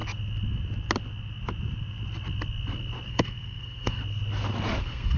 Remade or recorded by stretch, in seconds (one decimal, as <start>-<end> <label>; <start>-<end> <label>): 0.0-3.1 recorded; 3.1-4.0 remade; 4.0-4.8 recorded; 4.8-5.2 remade